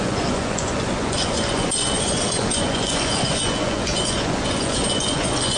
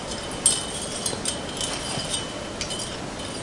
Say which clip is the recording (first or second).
second